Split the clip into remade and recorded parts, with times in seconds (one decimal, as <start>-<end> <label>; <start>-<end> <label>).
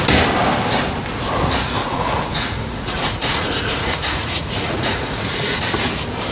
0.0-1.8 recorded; 1.8-5.6 remade; 5.6-6.3 recorded